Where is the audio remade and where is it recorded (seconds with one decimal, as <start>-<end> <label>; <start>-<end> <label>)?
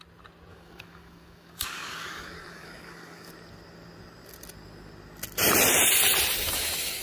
0.0-0.5 recorded; 0.5-3.3 remade; 3.3-7.0 recorded